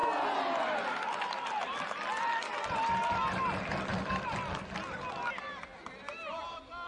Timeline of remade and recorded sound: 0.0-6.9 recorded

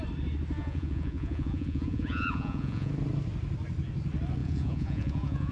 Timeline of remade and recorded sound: 0.0-0.6 recorded; 0.6-2.9 remade; 2.9-4.4 recorded; 4.4-5.5 remade

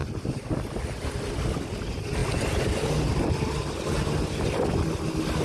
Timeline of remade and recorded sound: 0.0-5.4 recorded

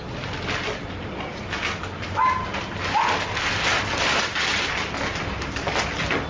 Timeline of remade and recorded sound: 0.0-6.3 recorded

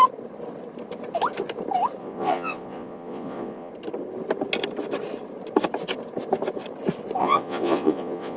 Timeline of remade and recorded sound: 0.0-2.0 recorded; 2.0-3.7 remade; 3.7-7.2 recorded; 7.2-8.4 remade

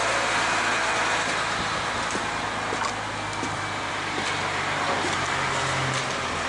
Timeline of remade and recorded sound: 0.0-6.5 recorded